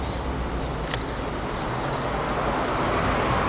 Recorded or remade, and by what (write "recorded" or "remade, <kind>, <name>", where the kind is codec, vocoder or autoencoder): recorded